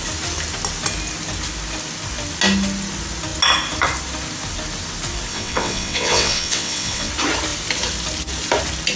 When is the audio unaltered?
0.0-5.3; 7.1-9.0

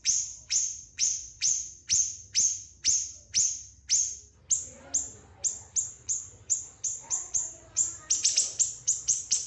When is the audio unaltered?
1.8-5.9; 7.8-8.6

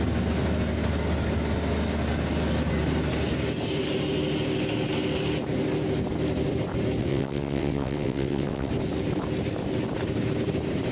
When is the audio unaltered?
0.0-7.0; 8.7-10.9

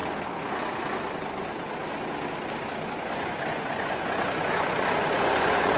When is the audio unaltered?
0.0-2.9

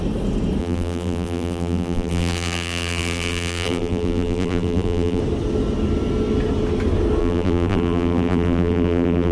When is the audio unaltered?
0.0-0.6; 5.2-7.2

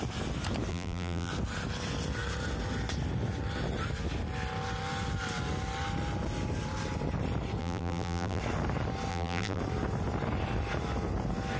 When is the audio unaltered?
0.0-0.7; 1.3-7.6; 8.4-9.1; 9.6-11.6